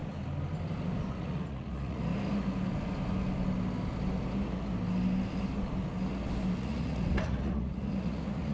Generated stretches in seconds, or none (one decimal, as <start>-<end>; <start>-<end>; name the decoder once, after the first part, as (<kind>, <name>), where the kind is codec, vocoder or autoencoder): 1.1-2.1 (vocoder, Vocos); 6.6-8.5